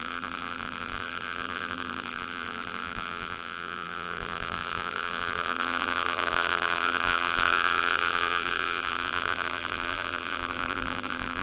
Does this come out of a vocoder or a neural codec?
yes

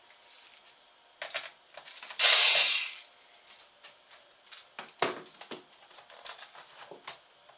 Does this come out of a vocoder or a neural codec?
no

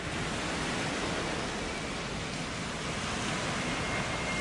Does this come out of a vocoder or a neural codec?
no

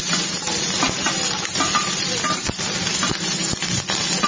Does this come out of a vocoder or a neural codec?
no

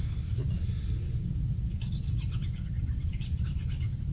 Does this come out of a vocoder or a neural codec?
no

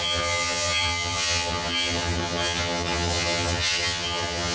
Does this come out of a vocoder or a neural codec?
yes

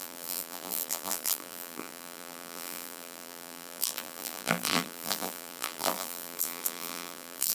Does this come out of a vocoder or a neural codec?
yes